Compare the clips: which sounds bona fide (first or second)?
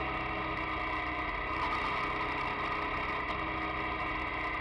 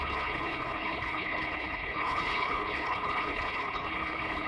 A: first